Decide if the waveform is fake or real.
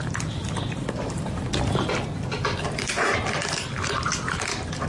real